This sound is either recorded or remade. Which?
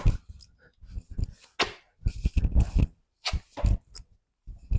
recorded